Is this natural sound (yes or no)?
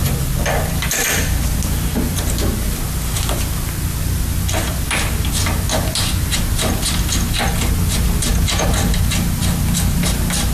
yes